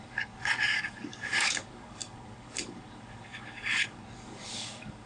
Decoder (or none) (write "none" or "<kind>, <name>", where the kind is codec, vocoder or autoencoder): codec, DAC